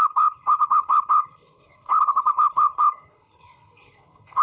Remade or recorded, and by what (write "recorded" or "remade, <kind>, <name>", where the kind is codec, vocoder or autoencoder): remade, codec, HILCodec